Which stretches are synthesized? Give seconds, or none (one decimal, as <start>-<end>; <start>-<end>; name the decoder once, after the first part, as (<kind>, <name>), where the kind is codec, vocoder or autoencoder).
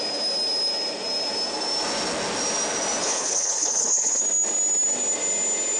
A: 3.0-4.2 (codec, HILCodec)